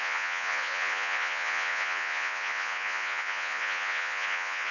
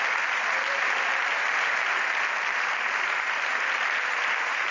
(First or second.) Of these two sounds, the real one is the second